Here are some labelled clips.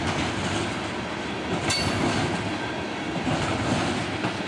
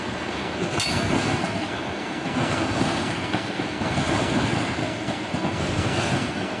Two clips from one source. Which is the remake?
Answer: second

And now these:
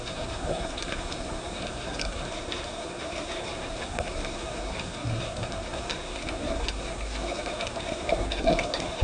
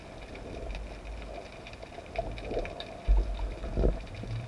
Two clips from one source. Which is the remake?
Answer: first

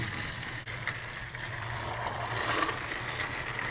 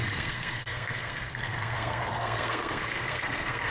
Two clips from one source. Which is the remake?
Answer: second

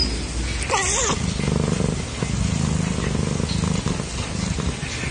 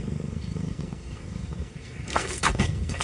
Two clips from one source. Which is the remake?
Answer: second